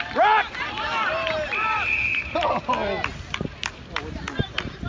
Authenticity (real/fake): real